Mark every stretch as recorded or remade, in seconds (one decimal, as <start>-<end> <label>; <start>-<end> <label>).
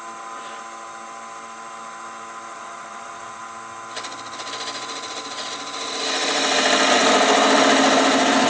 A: 0.0-2.5 recorded; 2.5-3.4 remade; 3.4-8.5 recorded